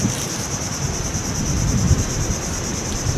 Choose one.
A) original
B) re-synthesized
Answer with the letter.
B